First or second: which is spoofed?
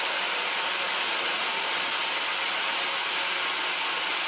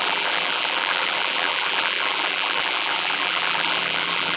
second